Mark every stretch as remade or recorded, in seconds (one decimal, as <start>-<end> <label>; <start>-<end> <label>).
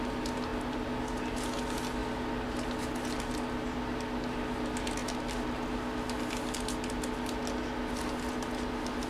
0.0-9.1 recorded